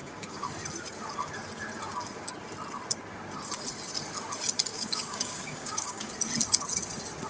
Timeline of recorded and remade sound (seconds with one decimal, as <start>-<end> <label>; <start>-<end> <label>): 0.0-0.5 remade; 0.5-4.7 recorded; 4.7-6.1 remade; 6.1-7.3 recorded